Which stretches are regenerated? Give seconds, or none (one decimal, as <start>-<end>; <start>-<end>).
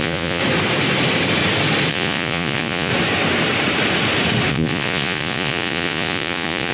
0.0-0.4; 1.9-2.9; 4.5-6.7